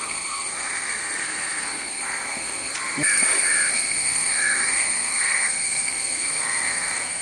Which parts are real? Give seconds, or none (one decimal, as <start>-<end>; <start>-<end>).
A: 2.7-3.7